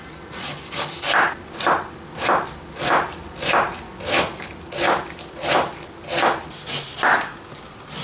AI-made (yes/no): yes